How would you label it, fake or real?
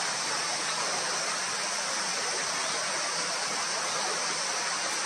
real